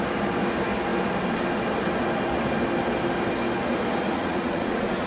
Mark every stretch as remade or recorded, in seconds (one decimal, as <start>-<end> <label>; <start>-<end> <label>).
0.0-4.0 recorded; 4.0-5.1 remade

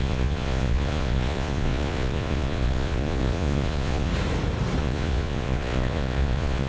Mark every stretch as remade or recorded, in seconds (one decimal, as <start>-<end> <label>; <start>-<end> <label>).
0.0-4.1 remade; 4.1-4.8 recorded; 4.8-6.7 remade